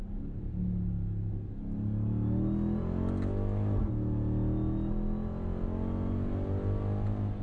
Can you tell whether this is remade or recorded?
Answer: recorded